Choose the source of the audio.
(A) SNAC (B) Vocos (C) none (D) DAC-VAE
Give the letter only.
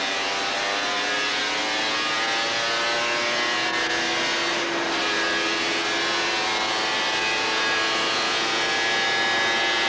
C